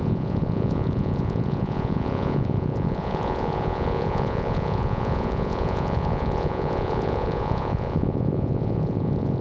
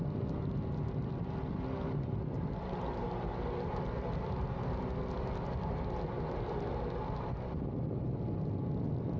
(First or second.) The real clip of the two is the second